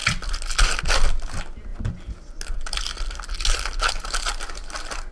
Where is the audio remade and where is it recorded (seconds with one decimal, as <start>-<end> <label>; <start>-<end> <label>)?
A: 0.0-5.1 recorded